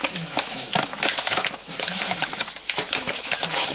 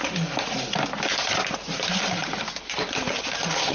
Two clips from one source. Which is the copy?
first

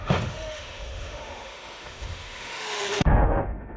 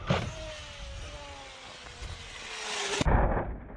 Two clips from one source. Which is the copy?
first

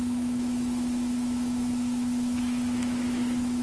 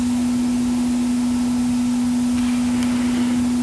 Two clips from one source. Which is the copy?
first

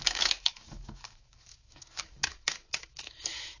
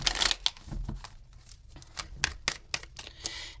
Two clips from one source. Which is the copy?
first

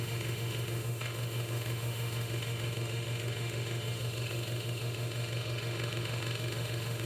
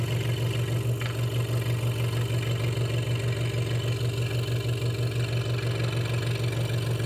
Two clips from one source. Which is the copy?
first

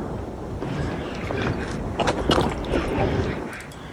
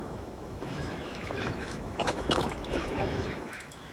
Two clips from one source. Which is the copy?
second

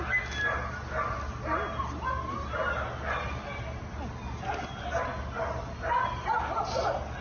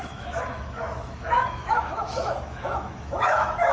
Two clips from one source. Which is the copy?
second